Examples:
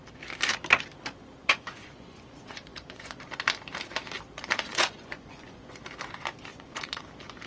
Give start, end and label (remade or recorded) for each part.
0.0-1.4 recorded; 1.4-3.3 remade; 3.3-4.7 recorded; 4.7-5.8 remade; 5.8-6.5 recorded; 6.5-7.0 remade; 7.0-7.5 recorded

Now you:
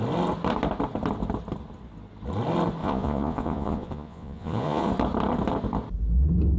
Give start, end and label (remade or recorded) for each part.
0.0-2.8 recorded; 2.8-4.9 remade; 4.9-6.6 recorded

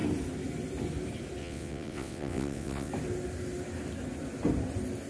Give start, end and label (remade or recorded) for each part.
0.0-1.4 recorded; 1.4-2.9 remade; 2.9-5.1 recorded

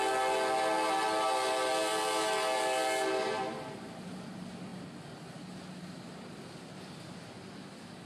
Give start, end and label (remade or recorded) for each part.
0.0-8.1 recorded

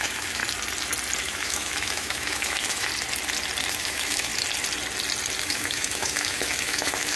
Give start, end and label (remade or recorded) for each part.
0.0-0.4 remade; 0.4-1.2 recorded; 1.2-2.9 remade; 2.9-3.7 recorded; 3.7-4.3 remade; 4.3-5.4 recorded; 5.4-7.2 remade

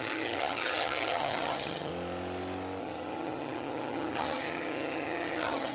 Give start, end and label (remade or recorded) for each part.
0.0-1.9 remade; 1.9-2.8 recorded; 2.8-5.7 remade